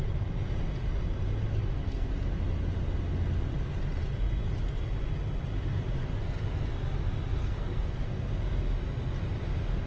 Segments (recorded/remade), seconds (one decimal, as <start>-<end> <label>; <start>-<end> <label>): 0.0-1.5 recorded; 1.5-2.1 remade; 2.1-7.4 recorded; 7.4-8.6 remade; 8.6-9.9 recorded